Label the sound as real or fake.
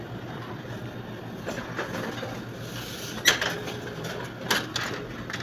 real